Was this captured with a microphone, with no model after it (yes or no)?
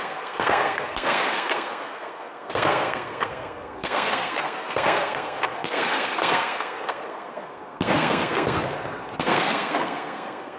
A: no